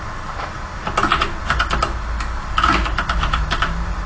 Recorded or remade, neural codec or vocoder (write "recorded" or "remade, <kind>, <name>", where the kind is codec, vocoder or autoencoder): recorded